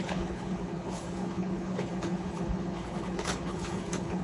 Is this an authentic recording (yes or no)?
no